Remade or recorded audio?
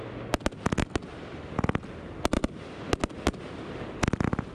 recorded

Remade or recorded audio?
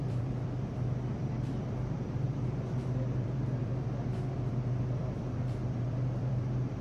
remade